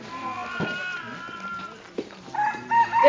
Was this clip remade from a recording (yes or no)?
no